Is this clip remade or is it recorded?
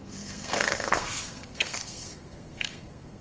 remade